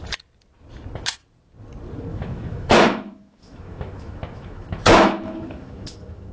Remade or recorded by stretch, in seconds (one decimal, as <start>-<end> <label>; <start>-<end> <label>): 0.0-2.1 recorded; 2.1-6.3 remade

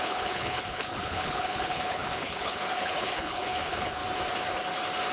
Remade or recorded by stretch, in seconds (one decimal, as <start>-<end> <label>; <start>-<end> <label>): 0.0-4.0 remade; 4.0-5.1 recorded

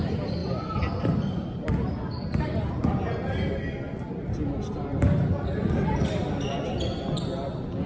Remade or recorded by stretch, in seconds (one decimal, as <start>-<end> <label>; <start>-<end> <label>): 0.0-7.9 recorded

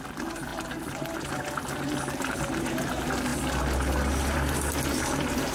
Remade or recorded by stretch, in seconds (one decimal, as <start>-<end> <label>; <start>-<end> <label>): 0.0-5.5 recorded

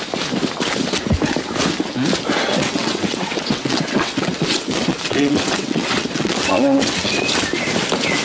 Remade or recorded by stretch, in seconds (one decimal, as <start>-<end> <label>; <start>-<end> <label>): 0.0-2.4 recorded; 2.4-7.3 remade; 7.3-8.2 recorded

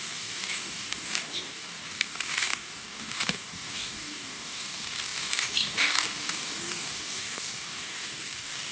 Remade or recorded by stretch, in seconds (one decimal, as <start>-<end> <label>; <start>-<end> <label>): 0.0-8.7 remade